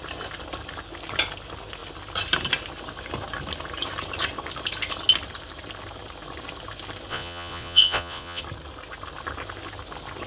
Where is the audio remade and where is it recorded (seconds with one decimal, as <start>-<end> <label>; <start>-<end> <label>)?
0.0-7.1 recorded; 7.1-8.4 remade; 8.4-10.3 recorded